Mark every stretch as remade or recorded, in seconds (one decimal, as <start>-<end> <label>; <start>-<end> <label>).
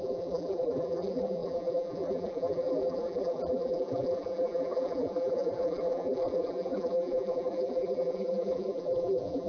0.0-9.5 remade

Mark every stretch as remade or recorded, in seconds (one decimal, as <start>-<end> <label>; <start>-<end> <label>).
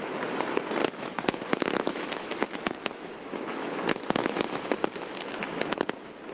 0.0-0.8 recorded; 0.8-4.6 remade; 4.6-6.3 recorded